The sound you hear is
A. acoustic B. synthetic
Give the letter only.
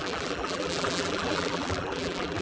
B